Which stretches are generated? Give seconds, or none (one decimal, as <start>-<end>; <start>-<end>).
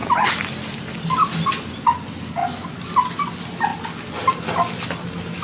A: none